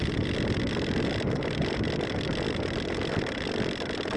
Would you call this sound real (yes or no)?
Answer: yes